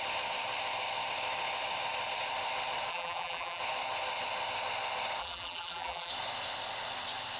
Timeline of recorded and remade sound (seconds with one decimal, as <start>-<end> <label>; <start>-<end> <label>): 0.0-2.9 recorded; 2.9-3.6 remade; 3.6-5.2 recorded; 5.2-6.1 remade; 6.1-7.4 recorded